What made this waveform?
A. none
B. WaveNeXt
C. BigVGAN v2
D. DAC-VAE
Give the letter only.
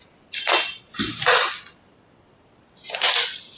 A